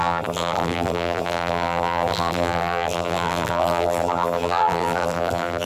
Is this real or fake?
fake